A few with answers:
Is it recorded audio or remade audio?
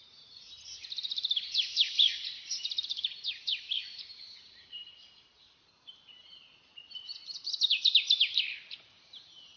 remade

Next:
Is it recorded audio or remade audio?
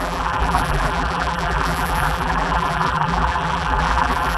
remade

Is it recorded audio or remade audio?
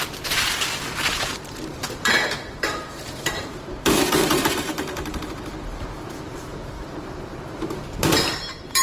remade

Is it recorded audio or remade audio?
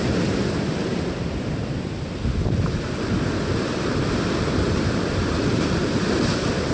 remade